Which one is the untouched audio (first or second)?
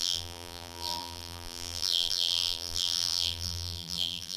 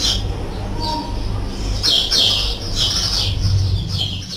second